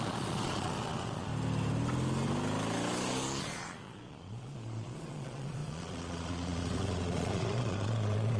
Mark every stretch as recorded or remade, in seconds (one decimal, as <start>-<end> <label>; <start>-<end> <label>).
0.0-1.3 remade; 1.3-3.4 recorded; 3.4-8.4 remade